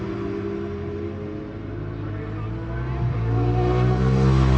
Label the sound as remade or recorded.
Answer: recorded